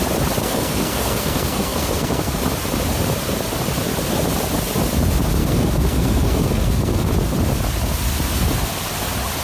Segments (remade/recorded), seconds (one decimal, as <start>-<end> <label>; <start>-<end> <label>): 0.0-0.4 recorded; 0.4-2.4 remade; 2.4-5.4 recorded; 5.4-7.1 remade; 7.1-9.4 recorded